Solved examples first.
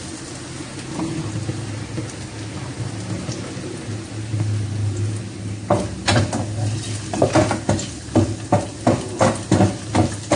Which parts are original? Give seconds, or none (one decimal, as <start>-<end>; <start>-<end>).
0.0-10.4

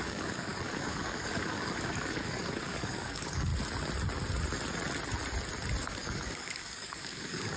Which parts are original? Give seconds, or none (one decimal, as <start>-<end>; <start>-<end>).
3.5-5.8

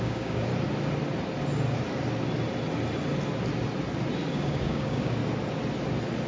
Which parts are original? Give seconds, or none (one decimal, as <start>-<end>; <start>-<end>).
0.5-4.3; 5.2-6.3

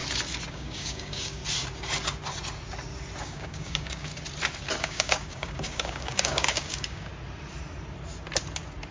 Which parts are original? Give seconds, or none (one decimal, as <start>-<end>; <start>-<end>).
0.0-0.5; 1.4-3.2; 4.1-4.8; 7.1-8.9

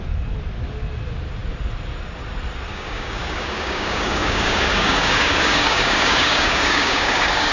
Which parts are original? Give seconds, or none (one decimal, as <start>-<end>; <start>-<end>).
0.0-2.7

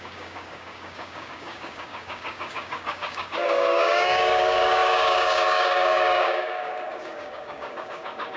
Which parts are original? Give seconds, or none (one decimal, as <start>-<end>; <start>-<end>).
none

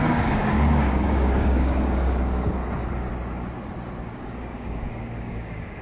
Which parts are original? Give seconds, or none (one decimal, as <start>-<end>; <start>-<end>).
2.6-4.1

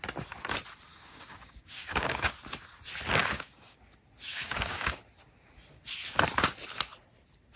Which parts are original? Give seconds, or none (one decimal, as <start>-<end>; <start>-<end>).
0.0-0.9; 2.3-3.2; 3.8-4.3; 5.0-7.6